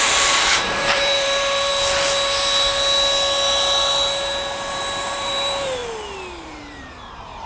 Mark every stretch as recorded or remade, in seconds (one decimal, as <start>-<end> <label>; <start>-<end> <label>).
0.0-1.7 remade; 1.7-4.7 recorded; 4.7-5.8 remade; 5.8-6.4 recorded; 6.4-7.5 remade